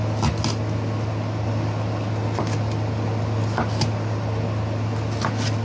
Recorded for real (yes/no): yes